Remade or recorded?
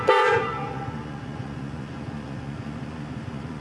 remade